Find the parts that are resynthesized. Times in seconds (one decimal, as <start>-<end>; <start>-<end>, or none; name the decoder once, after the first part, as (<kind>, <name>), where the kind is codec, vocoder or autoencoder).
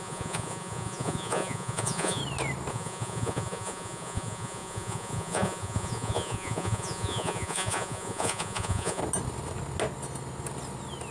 0.0-2.2 (vocoder, Vocos); 2.7-9.0